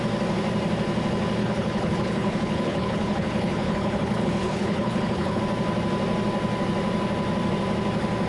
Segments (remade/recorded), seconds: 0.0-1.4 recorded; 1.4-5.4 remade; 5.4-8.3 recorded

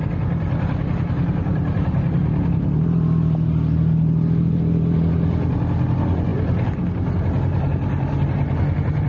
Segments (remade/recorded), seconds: 0.0-9.1 recorded

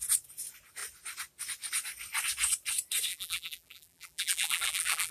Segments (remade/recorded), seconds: 0.0-3.1 recorded; 3.1-5.1 remade

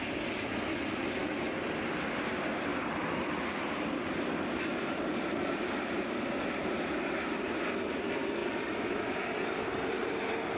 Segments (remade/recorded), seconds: 0.0-2.7 recorded; 2.7-6.2 remade; 6.2-10.6 recorded